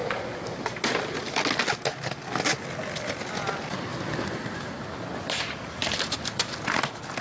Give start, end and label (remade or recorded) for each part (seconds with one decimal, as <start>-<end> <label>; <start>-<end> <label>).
0.0-3.9 recorded; 3.9-4.8 remade; 4.8-5.8 recorded; 5.8-6.6 remade; 6.6-7.2 recorded